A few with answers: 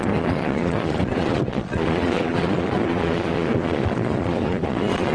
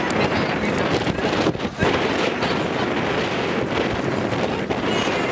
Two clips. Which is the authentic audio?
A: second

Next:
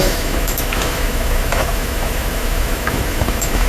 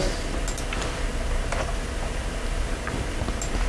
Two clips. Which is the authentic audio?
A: second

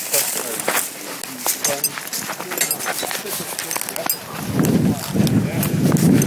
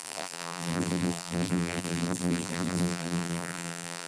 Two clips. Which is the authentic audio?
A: first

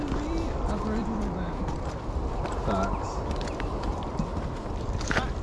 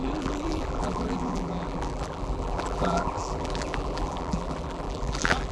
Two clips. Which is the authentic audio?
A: first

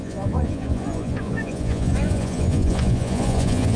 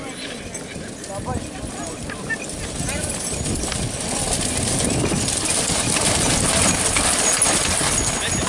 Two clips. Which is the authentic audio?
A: second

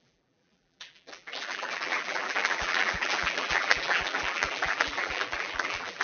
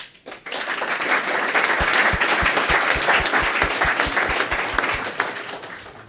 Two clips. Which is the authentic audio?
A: second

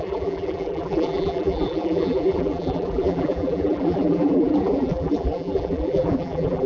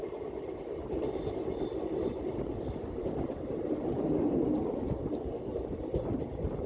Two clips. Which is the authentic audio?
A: second